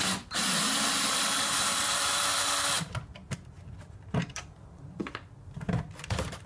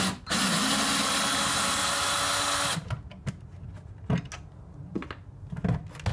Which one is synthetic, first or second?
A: first